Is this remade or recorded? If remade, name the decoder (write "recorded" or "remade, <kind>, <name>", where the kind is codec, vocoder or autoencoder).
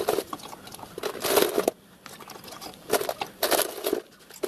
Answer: recorded